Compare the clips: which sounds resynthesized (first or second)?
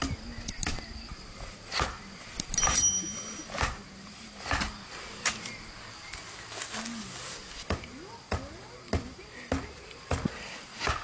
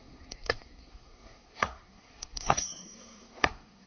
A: second